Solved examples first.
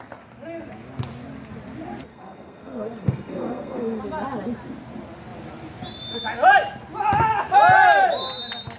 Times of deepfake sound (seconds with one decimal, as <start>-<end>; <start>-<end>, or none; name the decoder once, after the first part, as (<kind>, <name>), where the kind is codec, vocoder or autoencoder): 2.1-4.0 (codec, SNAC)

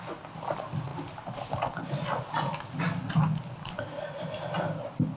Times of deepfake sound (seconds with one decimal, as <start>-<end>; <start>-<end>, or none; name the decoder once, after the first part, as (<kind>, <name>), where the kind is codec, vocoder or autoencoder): none

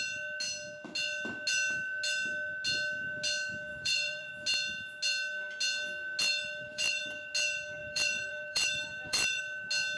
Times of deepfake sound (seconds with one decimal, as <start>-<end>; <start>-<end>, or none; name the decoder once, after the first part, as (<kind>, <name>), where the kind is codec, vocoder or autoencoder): 3.7-4.3 (vocoder, BigVGAN v2); 6.3-7.0; 7.8-9.4

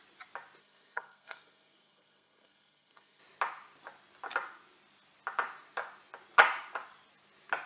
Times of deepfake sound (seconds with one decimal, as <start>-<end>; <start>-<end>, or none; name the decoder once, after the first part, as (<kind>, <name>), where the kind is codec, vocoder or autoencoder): 0.6-3.2 (codec, SNAC)